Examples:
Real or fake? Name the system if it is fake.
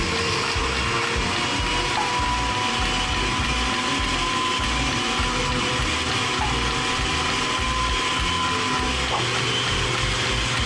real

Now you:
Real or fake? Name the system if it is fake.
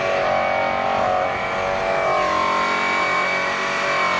real